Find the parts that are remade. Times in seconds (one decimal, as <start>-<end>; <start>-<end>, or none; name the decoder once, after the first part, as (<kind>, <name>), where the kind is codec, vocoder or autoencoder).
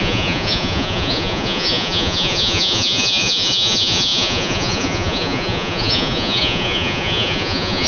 0.0-7.9 (vocoder, Vocos)